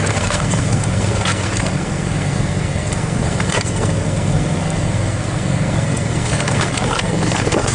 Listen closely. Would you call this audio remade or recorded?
remade